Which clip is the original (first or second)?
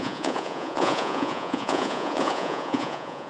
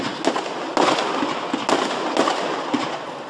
second